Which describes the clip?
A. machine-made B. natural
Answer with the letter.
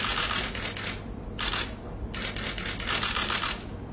B